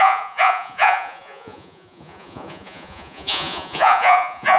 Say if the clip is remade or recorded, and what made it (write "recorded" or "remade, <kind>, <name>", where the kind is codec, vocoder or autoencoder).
remade, vocoder, Vocos